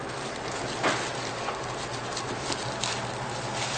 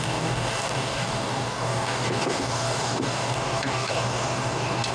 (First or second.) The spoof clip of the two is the second